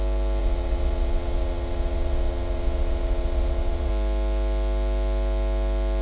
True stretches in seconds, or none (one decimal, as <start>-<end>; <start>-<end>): 0.0-0.4; 3.9-6.0